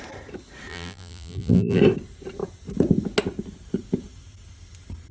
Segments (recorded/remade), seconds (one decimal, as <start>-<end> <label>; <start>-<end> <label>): 0.0-0.7 recorded; 0.7-1.8 remade; 1.8-5.1 recorded